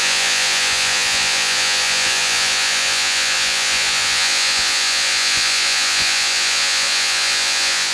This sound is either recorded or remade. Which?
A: remade